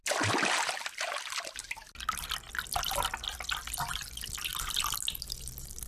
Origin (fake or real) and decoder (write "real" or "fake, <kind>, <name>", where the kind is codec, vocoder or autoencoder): real